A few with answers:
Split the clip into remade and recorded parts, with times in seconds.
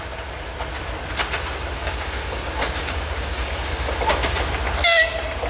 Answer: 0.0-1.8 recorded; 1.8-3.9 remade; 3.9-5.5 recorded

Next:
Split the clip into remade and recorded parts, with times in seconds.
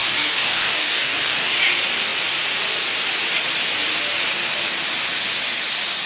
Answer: 0.0-1.5 remade; 1.5-6.1 recorded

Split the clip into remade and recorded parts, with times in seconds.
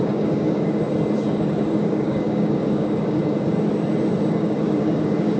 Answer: 0.0-0.8 remade; 0.8-1.3 recorded; 1.3-3.2 remade; 3.2-4.3 recorded; 4.3-5.4 remade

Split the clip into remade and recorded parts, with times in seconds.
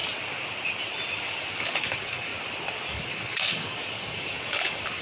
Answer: 0.0-1.5 recorded; 1.5-2.3 remade; 2.3-2.9 recorded; 2.9-5.0 remade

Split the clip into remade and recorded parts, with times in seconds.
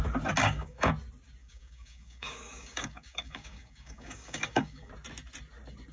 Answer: 0.0-0.4 recorded; 0.4-0.9 remade; 0.9-1.4 recorded; 1.4-4.9 remade; 4.9-5.9 recorded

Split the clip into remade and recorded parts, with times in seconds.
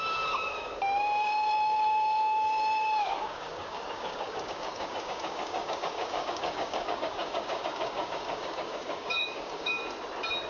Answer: 0.0-9.8 remade; 9.8-10.5 recorded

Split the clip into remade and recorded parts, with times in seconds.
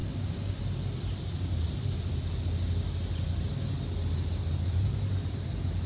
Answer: 0.0-0.6 remade; 0.6-5.9 recorded